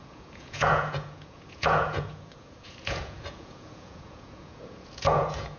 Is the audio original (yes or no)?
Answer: no